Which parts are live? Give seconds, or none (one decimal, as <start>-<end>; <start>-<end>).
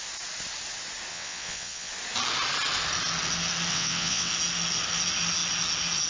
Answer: 0.0-1.1; 1.9-3.7; 4.3-6.1